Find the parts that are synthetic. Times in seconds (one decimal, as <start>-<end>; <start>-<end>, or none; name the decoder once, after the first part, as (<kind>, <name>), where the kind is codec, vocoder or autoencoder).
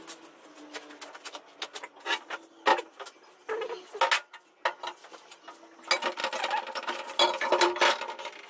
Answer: none